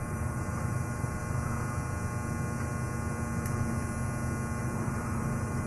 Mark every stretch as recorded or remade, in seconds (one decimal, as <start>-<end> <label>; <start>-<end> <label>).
0.0-1.2 remade; 1.2-4.6 recorded; 4.6-5.7 remade